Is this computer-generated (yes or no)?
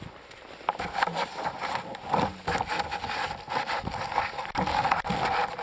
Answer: no